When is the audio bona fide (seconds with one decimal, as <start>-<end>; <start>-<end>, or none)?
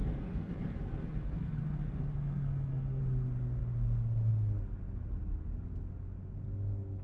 3.0-7.0